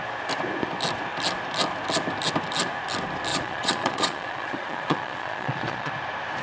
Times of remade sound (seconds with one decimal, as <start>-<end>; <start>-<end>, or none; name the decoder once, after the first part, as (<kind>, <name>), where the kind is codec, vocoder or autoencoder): 3.3-5.9 (vocoder, Vocos)